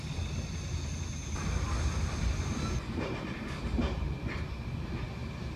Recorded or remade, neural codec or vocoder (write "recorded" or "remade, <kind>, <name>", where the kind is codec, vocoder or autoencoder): recorded